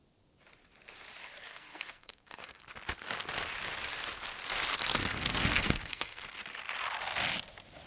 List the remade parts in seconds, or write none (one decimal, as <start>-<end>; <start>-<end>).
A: 1.5-2.6; 5.0-6.2